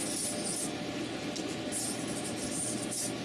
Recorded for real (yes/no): yes